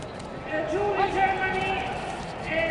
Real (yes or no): yes